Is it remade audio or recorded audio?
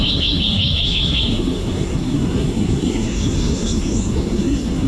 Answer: remade